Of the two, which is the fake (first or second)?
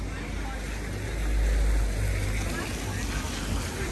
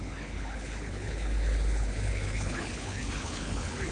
second